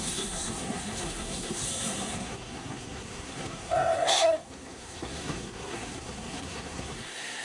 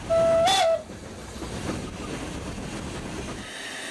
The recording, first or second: second